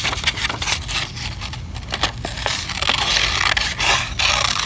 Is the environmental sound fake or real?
real